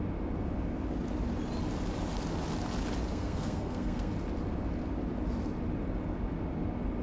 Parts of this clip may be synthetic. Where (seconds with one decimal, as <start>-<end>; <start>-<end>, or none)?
3.1-4.1